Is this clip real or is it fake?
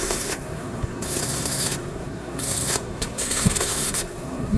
fake